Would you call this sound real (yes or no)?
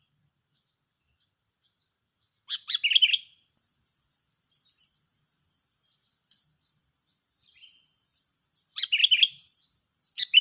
yes